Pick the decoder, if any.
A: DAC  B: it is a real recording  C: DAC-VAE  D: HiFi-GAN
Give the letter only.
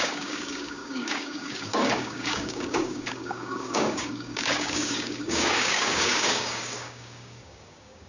A